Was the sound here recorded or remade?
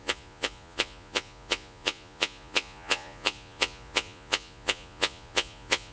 remade